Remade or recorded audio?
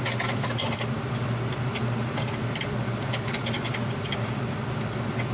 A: recorded